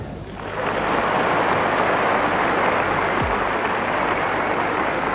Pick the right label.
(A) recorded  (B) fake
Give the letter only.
A